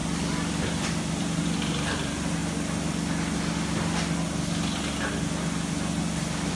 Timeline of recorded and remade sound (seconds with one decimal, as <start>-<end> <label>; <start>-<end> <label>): 0.0-0.5 recorded; 0.5-2.4 remade; 2.4-6.5 recorded